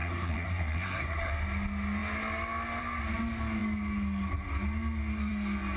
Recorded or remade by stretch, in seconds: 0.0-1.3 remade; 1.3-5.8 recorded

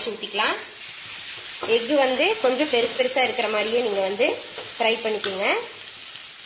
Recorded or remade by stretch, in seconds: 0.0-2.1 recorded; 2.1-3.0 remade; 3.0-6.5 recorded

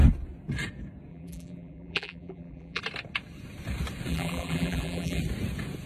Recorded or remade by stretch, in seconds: 0.0-1.1 recorded; 1.1-2.8 remade; 2.8-4.1 recorded; 4.1-5.2 remade; 5.2-5.9 recorded